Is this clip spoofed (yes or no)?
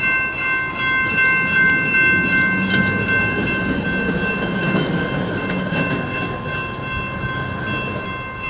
no